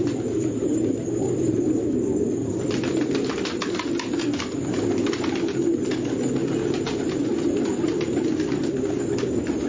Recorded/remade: recorded